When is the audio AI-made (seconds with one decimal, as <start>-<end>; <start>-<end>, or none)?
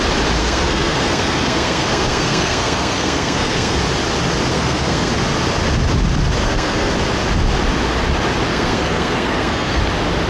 0.4-3.8; 4.5-5.1; 6.4-6.9; 8.5-9.8